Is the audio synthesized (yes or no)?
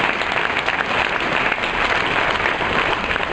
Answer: no